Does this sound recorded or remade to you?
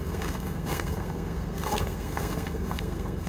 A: remade